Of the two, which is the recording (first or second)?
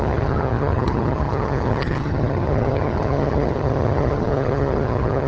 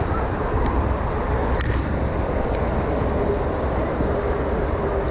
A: second